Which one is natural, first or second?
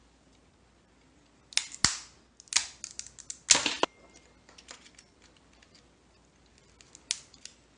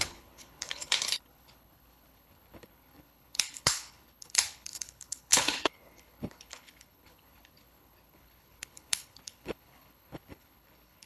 first